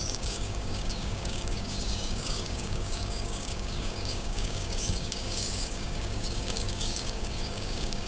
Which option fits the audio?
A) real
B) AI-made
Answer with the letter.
B